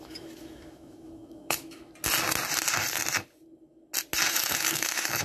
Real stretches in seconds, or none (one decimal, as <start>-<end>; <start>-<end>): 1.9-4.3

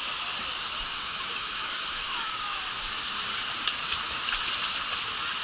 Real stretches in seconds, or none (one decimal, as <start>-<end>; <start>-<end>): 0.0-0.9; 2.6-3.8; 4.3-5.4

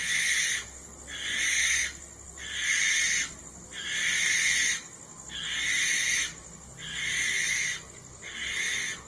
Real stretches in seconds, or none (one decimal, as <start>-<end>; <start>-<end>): 0.0-9.1

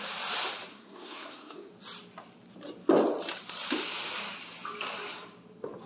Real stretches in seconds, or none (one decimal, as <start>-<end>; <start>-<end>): 0.0-0.7; 1.7-5.9

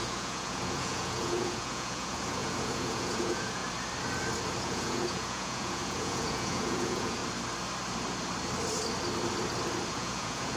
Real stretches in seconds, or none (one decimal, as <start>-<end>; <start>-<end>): 3.6-4.6; 7.2-9.9